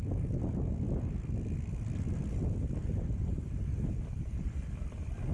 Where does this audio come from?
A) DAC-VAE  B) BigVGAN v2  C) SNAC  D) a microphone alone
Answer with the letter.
D